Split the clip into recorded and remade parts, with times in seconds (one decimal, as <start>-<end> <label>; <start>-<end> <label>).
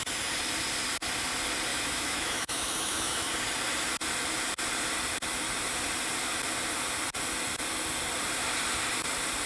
0.0-1.7 recorded; 1.7-3.3 remade; 3.3-9.5 recorded